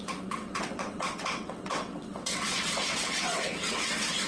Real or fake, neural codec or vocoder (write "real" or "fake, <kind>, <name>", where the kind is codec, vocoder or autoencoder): fake, vocoder, WaveNeXt